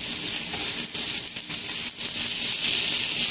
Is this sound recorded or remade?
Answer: recorded